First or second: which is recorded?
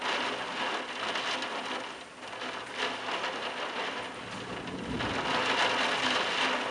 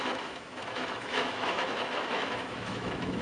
first